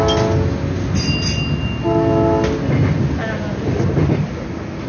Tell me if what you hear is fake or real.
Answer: real